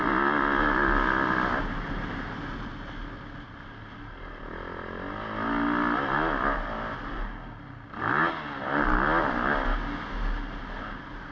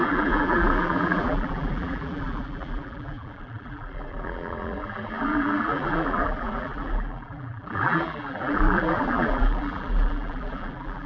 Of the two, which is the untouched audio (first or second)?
first